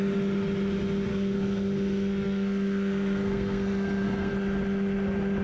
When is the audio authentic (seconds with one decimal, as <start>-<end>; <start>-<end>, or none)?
0.0-1.1; 4.3-5.4